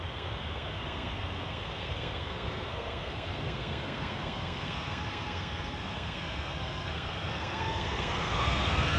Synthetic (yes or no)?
yes